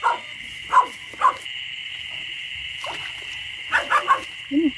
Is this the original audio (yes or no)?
yes